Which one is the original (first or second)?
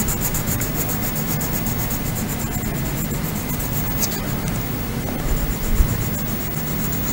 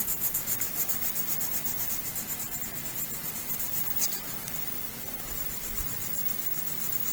first